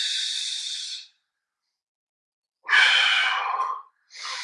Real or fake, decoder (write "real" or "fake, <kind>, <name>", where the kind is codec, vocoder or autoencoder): real